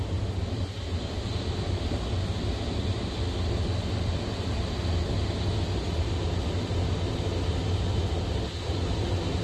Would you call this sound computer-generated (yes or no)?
no